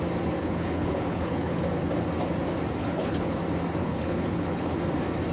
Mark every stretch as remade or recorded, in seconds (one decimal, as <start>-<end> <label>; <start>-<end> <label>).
0.0-0.4 recorded; 0.4-1.6 remade; 1.6-2.8 recorded; 2.8-3.4 remade; 3.4-3.8 recorded; 3.8-4.8 remade; 4.8-5.3 recorded